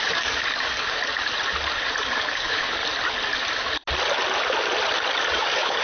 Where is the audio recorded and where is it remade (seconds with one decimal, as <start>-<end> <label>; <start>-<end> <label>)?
0.0-1.0 remade; 1.0-2.0 recorded; 2.0-2.8 remade; 2.8-5.2 recorded; 5.2-5.8 remade